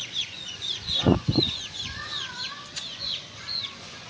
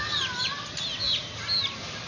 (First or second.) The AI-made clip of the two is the first